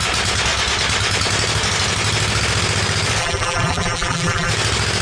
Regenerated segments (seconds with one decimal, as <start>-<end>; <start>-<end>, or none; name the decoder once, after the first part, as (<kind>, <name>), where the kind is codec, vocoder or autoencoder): 3.2-4.5 (vocoder, BigVGAN v2)